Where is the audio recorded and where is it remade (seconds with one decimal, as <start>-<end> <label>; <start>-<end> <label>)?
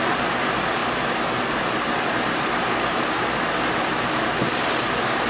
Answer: 0.0-5.3 recorded